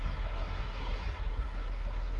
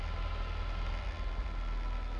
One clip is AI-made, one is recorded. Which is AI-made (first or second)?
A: first